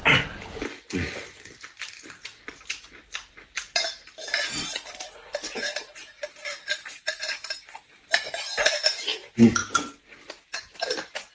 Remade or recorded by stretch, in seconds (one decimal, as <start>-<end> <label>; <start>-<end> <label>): 0.0-11.3 recorded